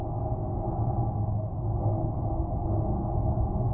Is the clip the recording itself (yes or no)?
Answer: yes